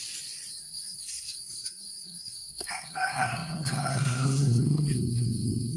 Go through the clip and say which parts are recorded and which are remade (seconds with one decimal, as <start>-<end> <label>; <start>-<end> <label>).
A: 0.0-0.6 recorded; 0.6-5.8 remade

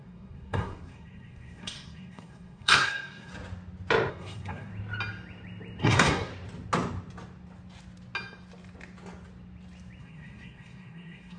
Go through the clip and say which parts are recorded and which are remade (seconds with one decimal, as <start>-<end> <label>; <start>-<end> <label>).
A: 0.0-3.3 remade; 3.3-4.1 recorded; 4.1-4.7 remade; 4.7-5.8 recorded; 5.8-6.3 remade; 6.3-10.0 recorded; 10.0-11.4 remade

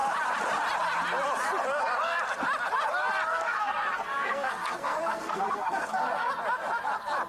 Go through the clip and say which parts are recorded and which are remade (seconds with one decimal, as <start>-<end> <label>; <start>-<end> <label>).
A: 0.0-3.3 recorded; 3.3-6.3 remade; 6.3-7.3 recorded

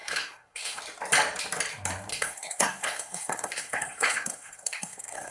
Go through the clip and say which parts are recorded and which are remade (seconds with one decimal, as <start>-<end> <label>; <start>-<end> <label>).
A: 0.0-0.8 remade; 0.8-2.1 recorded; 2.1-5.3 remade